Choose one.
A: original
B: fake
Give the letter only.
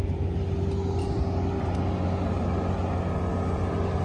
A